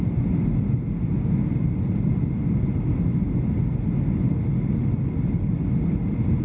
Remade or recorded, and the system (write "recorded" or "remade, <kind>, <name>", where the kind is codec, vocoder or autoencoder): recorded